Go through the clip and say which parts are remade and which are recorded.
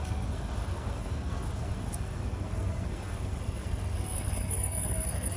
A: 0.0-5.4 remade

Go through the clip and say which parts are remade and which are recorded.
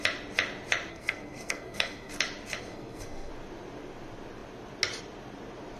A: 0.0-0.9 recorded; 0.9-2.1 remade; 2.1-2.6 recorded; 2.6-3.3 remade; 3.3-5.8 recorded